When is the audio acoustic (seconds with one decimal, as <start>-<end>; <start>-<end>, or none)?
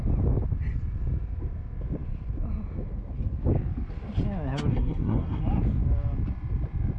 0.0-4.7; 5.4-7.0